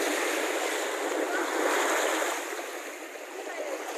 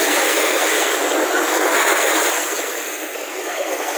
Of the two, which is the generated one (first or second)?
second